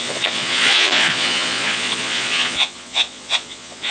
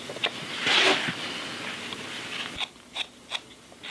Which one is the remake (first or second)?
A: first